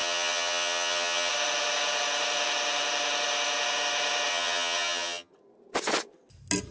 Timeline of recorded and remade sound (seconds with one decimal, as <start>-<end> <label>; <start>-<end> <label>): 0.0-1.3 remade; 1.3-4.3 recorded; 4.3-5.3 remade; 5.3-6.7 recorded